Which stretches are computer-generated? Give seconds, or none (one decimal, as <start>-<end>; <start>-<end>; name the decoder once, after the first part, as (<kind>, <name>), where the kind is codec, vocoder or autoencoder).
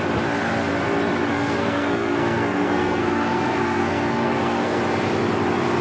1.3-4.8 (codec, SNAC)